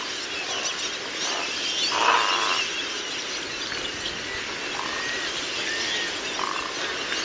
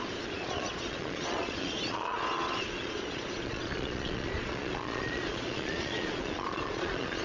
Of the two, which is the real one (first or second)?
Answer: first